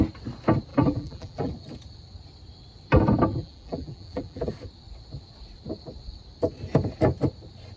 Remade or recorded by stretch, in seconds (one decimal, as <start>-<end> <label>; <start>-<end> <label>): 0.0-0.7 recorded; 0.7-1.5 remade; 1.5-3.3 recorded; 3.3-4.5 remade; 4.5-7.8 recorded